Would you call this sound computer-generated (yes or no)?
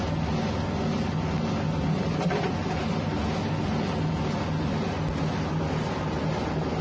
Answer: no